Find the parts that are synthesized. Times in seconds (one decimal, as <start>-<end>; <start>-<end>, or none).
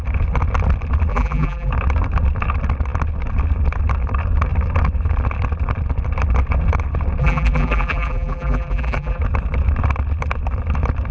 1.1-1.7; 7.2-9.2